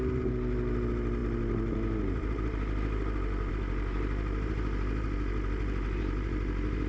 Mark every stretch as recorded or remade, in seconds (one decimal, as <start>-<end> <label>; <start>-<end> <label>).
0.0-6.9 recorded